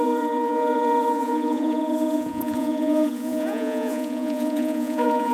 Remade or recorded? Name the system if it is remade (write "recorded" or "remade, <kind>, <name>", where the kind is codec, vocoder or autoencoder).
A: remade, vocoder, Vocos